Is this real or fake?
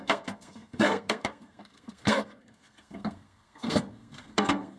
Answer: fake